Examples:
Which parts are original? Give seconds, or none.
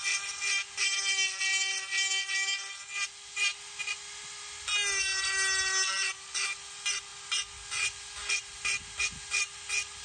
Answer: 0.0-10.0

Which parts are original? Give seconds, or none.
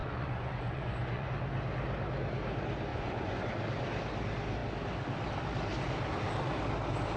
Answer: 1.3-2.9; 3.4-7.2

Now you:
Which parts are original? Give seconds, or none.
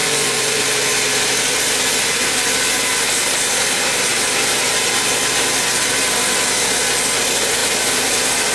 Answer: 0.6-8.5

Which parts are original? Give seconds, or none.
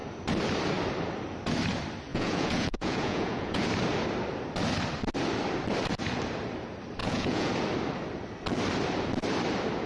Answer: 0.0-2.1; 3.6-7.0; 7.5-9.9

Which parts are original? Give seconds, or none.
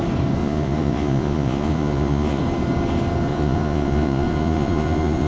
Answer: 0.0-0.4; 2.4-3.3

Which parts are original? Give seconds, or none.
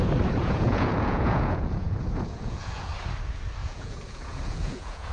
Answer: 0.0-0.4; 2.9-3.6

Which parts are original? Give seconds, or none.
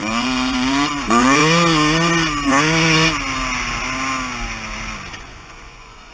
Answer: 1.4-5.1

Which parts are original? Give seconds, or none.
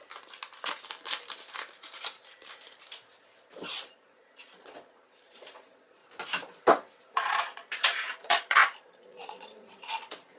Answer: 0.0-3.9; 6.0-7.0